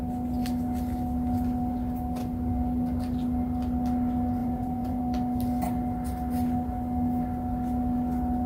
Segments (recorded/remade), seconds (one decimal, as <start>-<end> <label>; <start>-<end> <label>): 0.0-4.4 recorded; 4.4-5.0 remade; 5.0-8.5 recorded